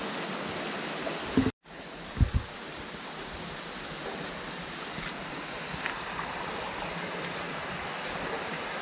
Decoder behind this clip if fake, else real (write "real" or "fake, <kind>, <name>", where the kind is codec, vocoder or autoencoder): real